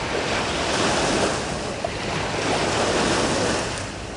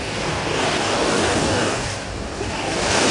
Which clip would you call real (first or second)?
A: first